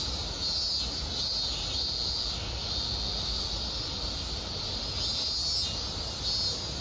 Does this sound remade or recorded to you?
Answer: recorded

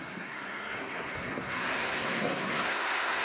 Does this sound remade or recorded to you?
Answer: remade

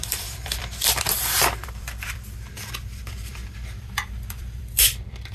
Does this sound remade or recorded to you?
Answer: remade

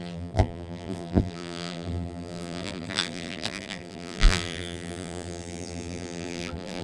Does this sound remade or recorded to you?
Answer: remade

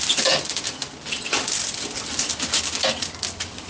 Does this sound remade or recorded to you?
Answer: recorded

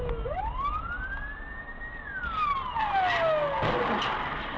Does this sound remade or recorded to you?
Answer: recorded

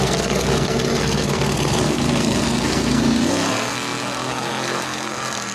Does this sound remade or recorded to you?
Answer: remade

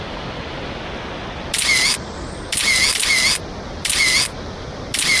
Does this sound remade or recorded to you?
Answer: recorded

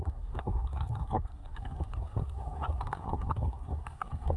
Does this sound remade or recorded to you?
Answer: remade